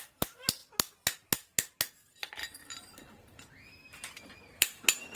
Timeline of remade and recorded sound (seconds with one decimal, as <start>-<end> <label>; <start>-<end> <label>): 0.0-2.4 recorded; 2.4-5.2 remade

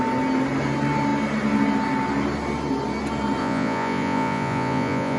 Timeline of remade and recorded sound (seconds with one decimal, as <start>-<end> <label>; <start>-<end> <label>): 0.0-3.4 recorded; 3.4-5.2 remade

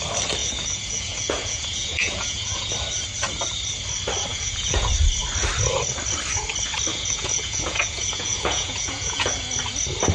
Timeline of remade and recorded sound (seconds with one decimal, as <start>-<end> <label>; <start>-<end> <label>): 0.0-0.4 recorded; 0.4-2.7 remade; 2.7-4.3 recorded; 4.3-4.9 remade; 4.9-6.9 recorded; 6.9-9.3 remade; 9.3-10.1 recorded

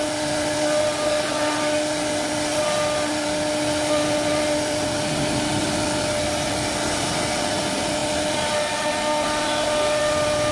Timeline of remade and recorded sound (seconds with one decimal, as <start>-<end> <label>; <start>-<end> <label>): 0.0-10.5 recorded

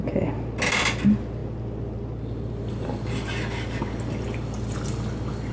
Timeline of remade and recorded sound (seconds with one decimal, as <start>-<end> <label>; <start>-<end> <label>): 0.0-5.5 recorded